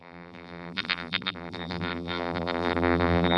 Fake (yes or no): yes